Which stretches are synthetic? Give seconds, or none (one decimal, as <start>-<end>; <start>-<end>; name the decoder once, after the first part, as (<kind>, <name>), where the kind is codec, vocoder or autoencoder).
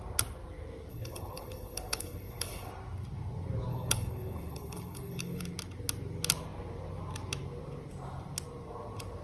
0.9-2.7 (codec, HILCodec); 3.7-5.4